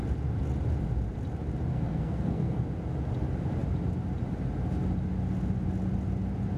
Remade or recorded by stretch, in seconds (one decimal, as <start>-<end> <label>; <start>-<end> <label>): 0.0-1.7 recorded; 1.7-2.6 remade; 2.6-6.6 recorded